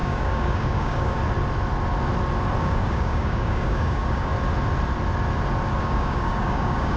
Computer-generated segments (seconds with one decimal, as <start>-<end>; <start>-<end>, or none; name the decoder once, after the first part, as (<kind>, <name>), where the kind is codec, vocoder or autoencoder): 0.0-1.2 (codec, DAC); 2.6-4.3; 5.8-7.0